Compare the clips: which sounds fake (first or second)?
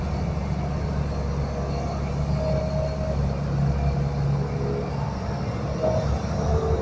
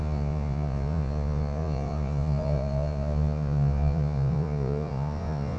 second